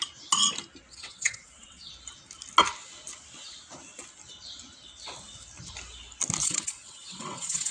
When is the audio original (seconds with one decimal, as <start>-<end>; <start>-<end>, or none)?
0.0-0.9; 1.9-6.4